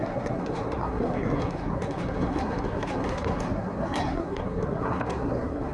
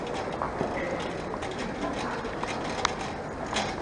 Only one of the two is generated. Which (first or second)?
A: first